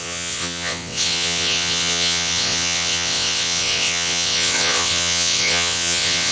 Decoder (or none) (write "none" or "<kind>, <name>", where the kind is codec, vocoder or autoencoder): vocoder, WaveNeXt